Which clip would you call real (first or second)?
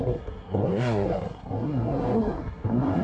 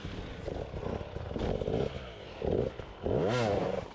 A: second